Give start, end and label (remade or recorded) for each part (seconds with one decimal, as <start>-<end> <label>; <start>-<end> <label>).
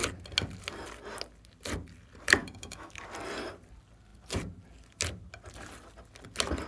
0.0-2.4 recorded; 2.4-3.0 remade; 3.0-6.7 recorded